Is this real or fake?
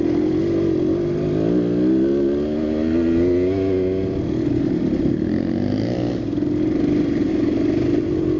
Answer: real